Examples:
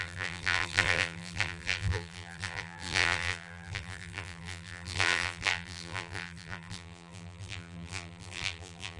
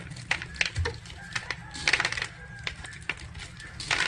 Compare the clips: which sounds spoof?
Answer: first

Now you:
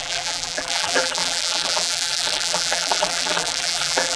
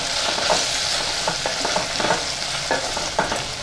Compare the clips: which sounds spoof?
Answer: first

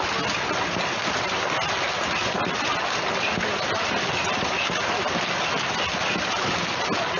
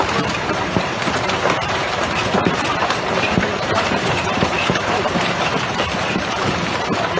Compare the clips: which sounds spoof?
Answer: second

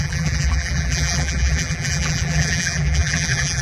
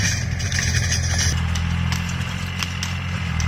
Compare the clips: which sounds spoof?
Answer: first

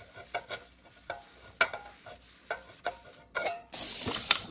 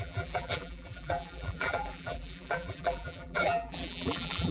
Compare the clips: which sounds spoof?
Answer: second